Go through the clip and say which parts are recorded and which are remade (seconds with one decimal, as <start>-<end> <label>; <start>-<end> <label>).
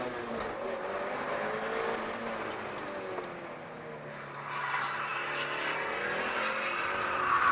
0.0-7.5 recorded